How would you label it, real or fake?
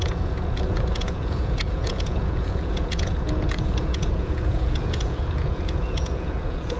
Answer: fake